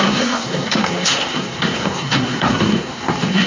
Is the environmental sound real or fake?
fake